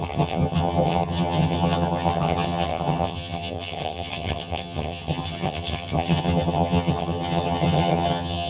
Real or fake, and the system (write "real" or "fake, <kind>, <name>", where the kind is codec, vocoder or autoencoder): fake, vocoder, HiFi-GAN